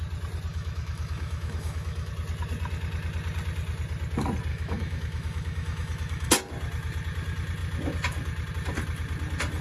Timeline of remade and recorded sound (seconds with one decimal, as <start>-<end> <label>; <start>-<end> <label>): 0.0-0.5 recorded; 0.5-2.1 remade; 2.1-4.5 recorded; 4.5-6.3 remade; 6.3-9.6 recorded